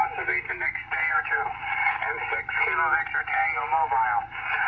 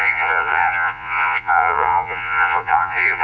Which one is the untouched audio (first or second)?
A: first